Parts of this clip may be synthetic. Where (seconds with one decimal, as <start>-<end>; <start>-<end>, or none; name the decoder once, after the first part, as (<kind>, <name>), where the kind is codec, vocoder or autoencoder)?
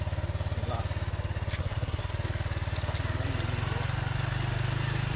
1.6-2.1 (codec, SNAC)